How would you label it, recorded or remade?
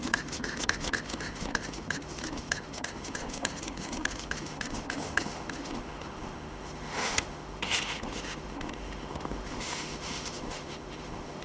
remade